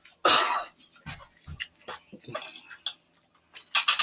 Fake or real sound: real